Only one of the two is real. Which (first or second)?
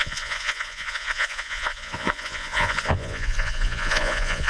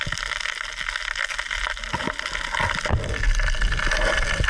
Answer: second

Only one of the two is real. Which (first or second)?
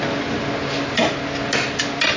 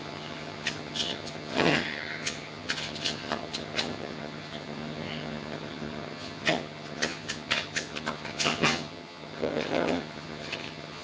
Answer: first